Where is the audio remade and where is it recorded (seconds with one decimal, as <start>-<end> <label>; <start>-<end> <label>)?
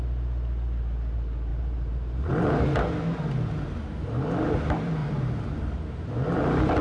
0.0-1.5 recorded; 1.5-2.3 remade; 2.3-5.0 recorded; 5.0-5.6 remade; 5.6-6.8 recorded